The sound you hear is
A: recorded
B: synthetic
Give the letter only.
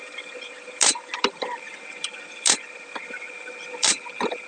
B